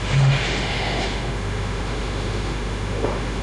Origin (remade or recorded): remade